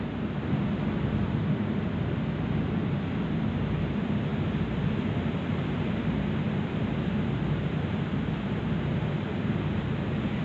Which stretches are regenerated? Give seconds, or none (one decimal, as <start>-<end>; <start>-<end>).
none

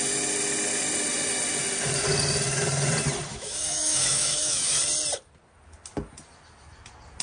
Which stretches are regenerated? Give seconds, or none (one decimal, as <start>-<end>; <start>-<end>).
3.3-4.8

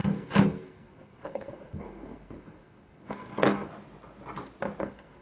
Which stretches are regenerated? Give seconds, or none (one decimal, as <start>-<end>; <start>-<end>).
0.0-3.7; 4.8-5.2

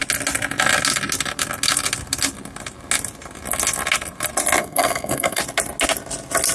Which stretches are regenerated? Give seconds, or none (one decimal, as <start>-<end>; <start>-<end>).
4.6-5.4

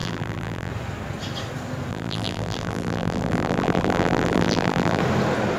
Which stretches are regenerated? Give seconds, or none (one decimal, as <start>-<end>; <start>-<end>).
0.0-0.7; 1.9-5.0